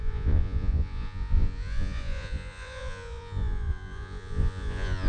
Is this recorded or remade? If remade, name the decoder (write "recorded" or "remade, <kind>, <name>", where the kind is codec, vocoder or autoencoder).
remade, vocoder, Vocos